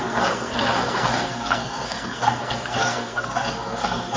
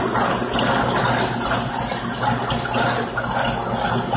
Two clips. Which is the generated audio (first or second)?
first